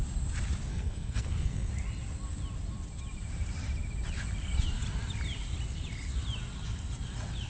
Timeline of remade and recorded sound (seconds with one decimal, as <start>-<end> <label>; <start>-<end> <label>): 0.0-0.7 recorded; 0.7-1.7 remade; 1.7-7.5 recorded